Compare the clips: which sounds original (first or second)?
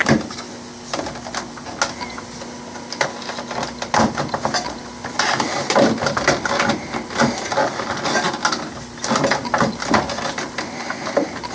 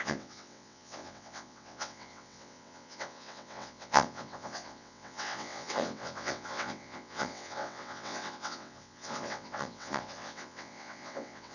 first